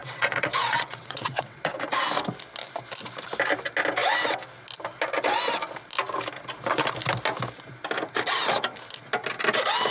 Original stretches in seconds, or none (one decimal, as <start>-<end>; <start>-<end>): 1.7-9.9